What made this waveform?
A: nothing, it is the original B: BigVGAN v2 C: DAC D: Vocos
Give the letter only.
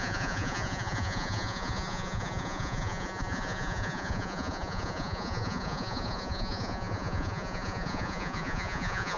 D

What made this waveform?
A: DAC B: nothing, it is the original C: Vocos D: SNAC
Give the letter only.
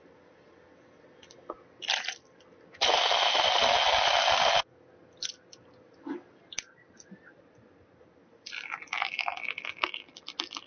B